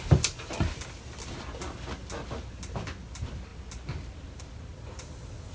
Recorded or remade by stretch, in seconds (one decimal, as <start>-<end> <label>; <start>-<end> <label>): 0.0-5.5 recorded